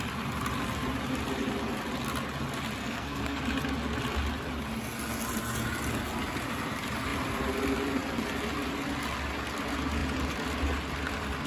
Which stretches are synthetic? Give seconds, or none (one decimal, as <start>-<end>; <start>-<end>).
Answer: 2.8-3.4